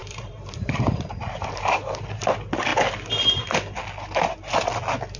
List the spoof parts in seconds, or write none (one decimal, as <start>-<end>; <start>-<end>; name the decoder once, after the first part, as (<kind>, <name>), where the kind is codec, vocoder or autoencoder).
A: 0.0-2.3 (vocoder, BigVGAN v2)

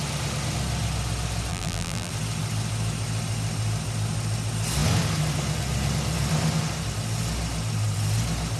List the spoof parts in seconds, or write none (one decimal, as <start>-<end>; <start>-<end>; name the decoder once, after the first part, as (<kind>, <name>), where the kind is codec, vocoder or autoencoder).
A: 1.5-2.1 (vocoder, BigVGAN v2)

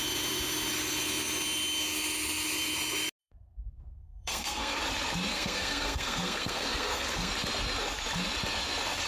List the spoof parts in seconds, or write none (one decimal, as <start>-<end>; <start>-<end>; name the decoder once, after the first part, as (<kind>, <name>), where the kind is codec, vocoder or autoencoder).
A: 3.2-4.8 (codec, SNAC); 5.3-7.3